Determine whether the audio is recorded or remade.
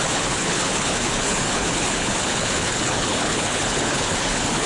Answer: remade